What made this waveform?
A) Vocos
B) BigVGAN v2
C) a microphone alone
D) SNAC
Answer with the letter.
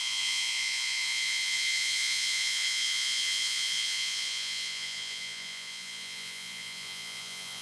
A